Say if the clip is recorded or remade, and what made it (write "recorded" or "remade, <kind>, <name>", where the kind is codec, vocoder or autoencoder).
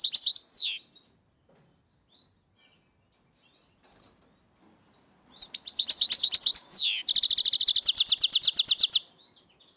recorded